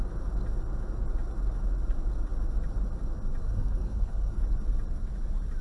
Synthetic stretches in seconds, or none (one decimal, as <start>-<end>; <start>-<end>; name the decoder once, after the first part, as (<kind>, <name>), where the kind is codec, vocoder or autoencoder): 3.4-4.4 (codec, SNAC)